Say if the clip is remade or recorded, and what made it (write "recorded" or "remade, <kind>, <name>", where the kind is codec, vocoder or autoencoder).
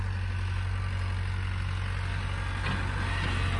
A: recorded